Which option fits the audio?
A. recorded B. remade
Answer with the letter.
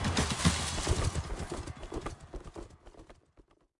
A